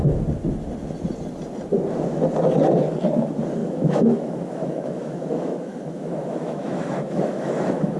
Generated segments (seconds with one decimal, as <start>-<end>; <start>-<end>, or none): 3.6-8.0